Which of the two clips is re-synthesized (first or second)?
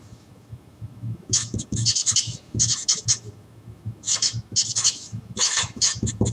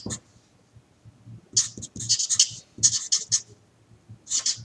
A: first